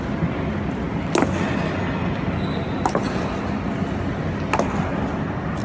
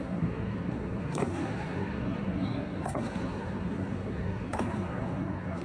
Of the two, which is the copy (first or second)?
second